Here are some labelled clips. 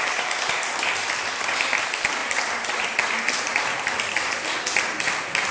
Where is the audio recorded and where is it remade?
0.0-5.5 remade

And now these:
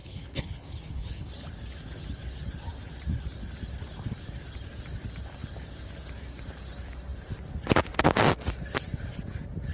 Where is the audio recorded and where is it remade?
0.0-1.3 remade; 1.3-9.7 recorded

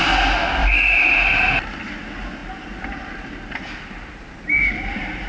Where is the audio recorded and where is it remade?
0.0-0.6 recorded; 0.6-1.3 remade; 1.3-2.4 recorded; 2.4-5.3 remade

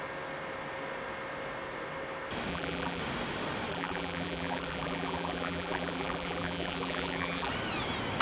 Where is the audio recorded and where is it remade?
0.0-2.5 recorded; 2.5-3.0 remade; 3.0-3.7 recorded; 3.7-7.5 remade; 7.5-8.2 recorded

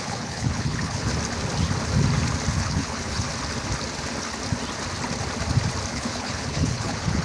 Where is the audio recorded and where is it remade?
0.0-1.1 remade; 1.1-2.5 recorded; 2.5-3.3 remade; 3.3-5.9 recorded; 5.9-7.2 remade

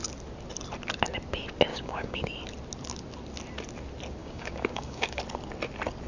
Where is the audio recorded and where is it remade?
0.0-1.7 recorded; 1.7-2.2 remade; 2.2-4.2 recorded; 4.2-5.2 remade; 5.2-6.1 recorded

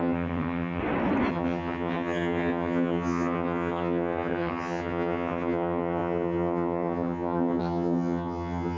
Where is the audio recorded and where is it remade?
0.0-0.8 remade; 0.8-1.3 recorded; 1.3-8.8 remade